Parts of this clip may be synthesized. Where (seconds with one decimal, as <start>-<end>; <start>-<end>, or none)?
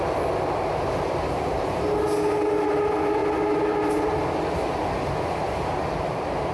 none